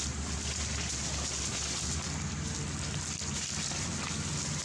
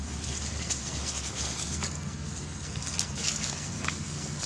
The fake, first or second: second